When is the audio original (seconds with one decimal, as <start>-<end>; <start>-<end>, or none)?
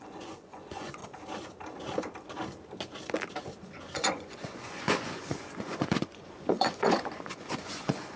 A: 1.0-3.6